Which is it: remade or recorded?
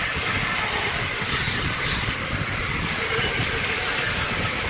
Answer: recorded